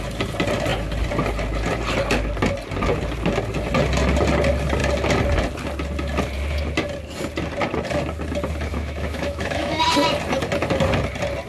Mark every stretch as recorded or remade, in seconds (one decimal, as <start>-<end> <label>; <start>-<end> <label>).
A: 0.0-8.7 recorded; 8.7-9.8 remade; 9.8-11.5 recorded